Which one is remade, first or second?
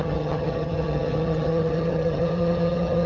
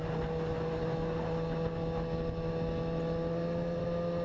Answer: first